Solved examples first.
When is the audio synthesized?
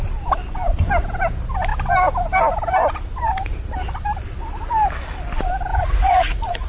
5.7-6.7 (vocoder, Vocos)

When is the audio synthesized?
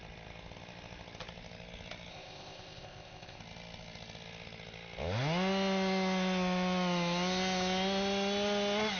2.1-3.4 (codec, ZipCodec)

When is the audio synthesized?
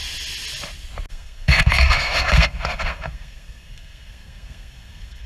1.1-5.3 (codec, SNAC)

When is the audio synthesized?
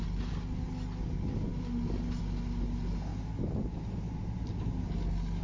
3.1-4.5 (vocoder, BigVGAN v2)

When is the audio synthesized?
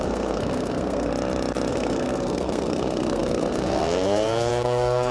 0.0-1.1 (codec, SNAC); 1.7-5.1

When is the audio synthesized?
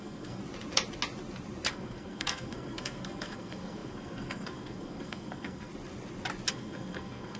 0.0-0.4 (codec, SNAC); 1.7-5.7; 6.5-7.4